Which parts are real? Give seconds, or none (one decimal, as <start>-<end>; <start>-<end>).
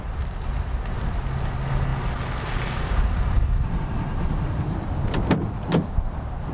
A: 0.0-6.5